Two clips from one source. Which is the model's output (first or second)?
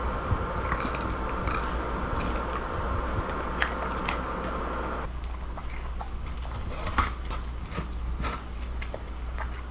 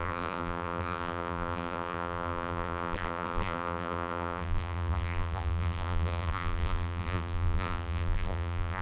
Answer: second